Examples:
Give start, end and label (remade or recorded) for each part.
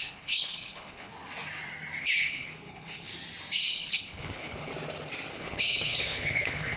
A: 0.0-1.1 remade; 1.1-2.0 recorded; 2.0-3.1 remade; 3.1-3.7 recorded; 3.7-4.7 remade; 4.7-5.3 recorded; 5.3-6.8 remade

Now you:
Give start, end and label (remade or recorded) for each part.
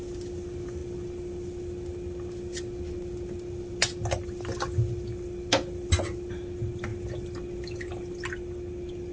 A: 0.0-9.1 recorded